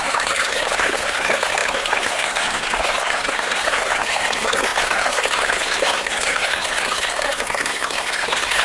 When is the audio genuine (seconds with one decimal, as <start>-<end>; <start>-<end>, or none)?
none